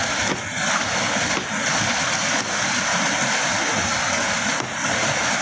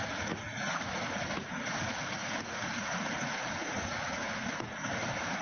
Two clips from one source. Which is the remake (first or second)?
second